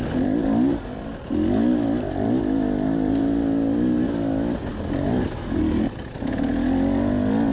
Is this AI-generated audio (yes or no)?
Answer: no